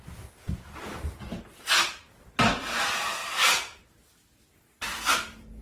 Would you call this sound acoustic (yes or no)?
yes